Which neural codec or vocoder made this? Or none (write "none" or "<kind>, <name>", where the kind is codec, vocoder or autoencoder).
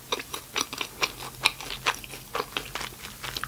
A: none